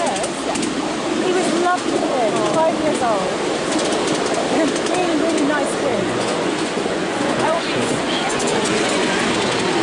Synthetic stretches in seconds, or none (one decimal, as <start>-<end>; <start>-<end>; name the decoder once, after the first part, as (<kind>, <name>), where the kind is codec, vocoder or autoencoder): 5.9-9.2 (vocoder, Vocos)